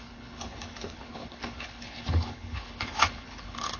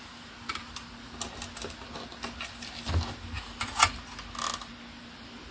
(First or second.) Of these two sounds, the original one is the second